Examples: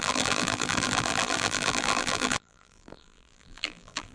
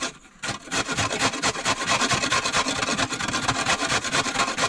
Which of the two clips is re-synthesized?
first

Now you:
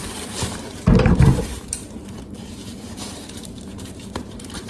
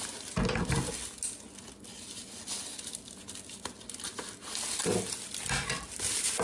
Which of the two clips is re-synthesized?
first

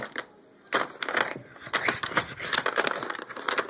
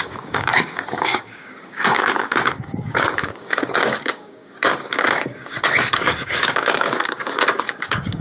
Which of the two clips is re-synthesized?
second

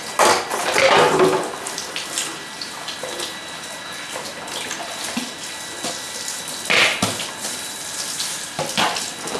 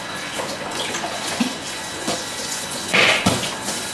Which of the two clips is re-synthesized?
second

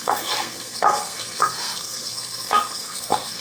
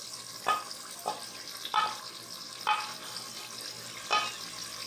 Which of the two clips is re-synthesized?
first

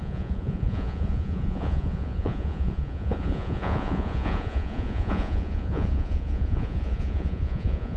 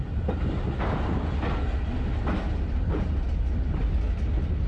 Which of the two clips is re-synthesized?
first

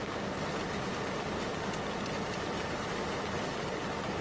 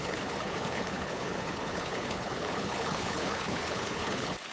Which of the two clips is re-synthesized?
second